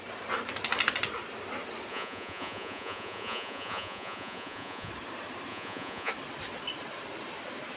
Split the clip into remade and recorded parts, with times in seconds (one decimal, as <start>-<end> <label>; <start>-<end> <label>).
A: 0.0-1.9 recorded; 1.9-4.9 remade; 4.9-5.5 recorded; 5.5-6.1 remade; 6.1-7.8 recorded